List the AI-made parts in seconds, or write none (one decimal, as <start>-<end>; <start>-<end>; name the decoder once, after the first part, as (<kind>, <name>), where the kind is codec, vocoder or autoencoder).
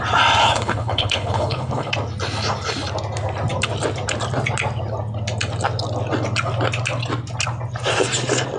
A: 0.4-1.9 (codec, HILCodec)